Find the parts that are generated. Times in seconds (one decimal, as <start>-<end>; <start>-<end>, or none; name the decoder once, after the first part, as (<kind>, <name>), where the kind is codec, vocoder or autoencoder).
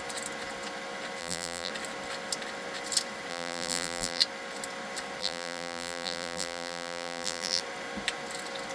1.2-1.7 (vocoder, BigVGAN v2); 3.3-4.2; 5.2-7.6